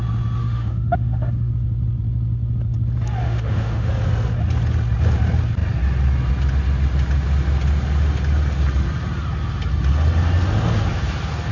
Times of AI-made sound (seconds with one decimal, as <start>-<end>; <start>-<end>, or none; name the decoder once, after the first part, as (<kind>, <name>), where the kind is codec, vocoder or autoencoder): 0.4-1.5 (autoencoder, DAC-VAE); 3.2-3.9